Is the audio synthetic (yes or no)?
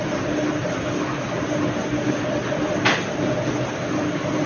no